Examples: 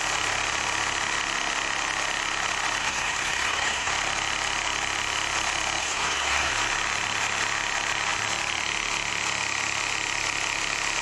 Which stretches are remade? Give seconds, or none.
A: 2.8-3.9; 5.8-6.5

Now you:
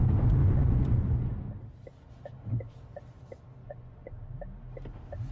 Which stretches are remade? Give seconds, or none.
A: 0.4-1.3; 3.6-4.1